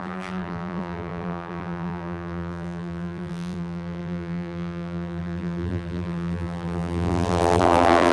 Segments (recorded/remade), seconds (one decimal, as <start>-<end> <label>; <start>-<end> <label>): 0.0-8.1 remade